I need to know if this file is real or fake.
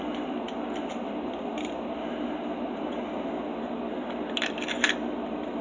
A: real